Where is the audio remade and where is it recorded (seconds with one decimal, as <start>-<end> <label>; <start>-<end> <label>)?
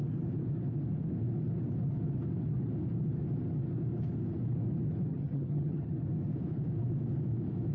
0.0-5.1 recorded; 5.1-5.9 remade; 5.9-7.7 recorded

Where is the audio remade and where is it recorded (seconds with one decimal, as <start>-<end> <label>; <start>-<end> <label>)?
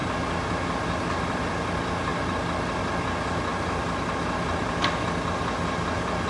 0.0-6.3 recorded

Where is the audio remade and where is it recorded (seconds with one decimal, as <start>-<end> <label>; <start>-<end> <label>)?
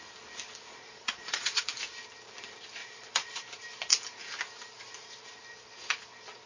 0.0-0.7 recorded; 0.7-1.6 remade; 1.6-2.8 recorded; 2.8-3.4 remade; 3.4-6.5 recorded